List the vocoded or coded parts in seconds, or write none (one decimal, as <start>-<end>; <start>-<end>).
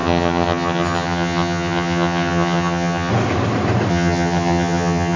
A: 0.0-3.1; 3.9-5.2